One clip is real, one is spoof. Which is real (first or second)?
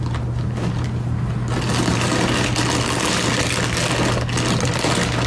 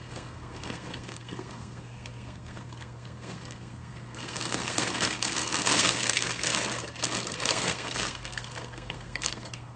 first